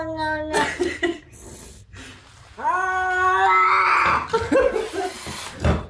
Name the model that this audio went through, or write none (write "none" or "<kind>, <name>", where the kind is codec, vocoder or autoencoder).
none